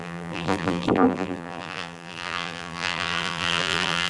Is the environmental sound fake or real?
fake